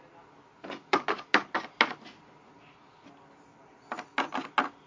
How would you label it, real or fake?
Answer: real